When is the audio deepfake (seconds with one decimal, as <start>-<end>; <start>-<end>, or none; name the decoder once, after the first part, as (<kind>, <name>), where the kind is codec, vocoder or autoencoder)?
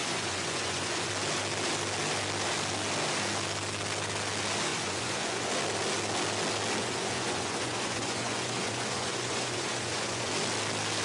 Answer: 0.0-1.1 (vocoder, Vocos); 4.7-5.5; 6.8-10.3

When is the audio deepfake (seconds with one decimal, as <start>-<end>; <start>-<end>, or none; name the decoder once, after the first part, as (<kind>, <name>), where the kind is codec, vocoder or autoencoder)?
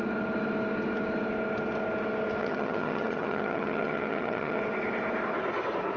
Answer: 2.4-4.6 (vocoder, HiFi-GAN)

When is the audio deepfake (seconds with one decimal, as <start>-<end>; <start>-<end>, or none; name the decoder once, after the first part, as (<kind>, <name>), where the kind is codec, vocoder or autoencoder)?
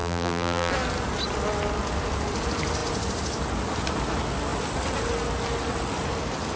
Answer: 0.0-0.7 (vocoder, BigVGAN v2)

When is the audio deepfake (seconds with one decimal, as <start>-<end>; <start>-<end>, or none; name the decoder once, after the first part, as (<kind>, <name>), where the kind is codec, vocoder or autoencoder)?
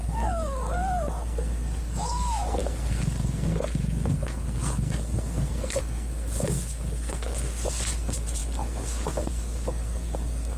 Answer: 0.0-10.6 (codec, SNAC)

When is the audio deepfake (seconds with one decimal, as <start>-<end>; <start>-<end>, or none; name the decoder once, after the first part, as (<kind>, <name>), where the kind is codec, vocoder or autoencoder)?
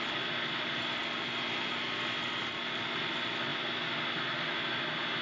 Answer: none